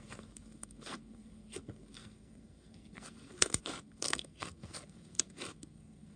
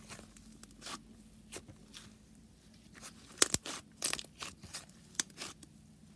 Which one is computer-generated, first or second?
first